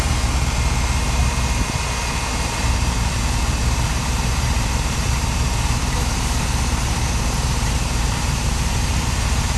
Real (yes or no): no